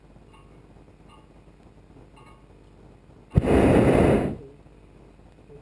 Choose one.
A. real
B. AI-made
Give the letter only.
A